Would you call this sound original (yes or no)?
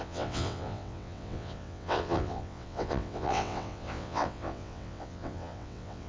no